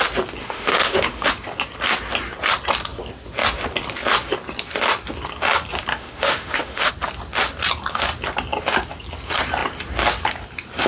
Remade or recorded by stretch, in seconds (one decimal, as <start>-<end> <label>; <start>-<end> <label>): 0.0-0.4 recorded; 0.4-1.3 remade; 1.3-5.9 recorded; 5.9-6.9 remade; 6.9-10.9 recorded